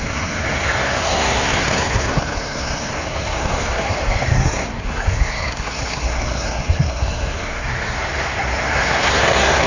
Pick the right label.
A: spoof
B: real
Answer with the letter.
A